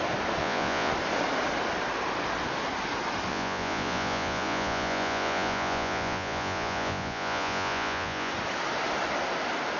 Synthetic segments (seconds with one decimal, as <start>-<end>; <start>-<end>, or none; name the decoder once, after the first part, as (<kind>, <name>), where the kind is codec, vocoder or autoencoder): 0.4-0.9 (vocoder, Vocos); 3.3-8.3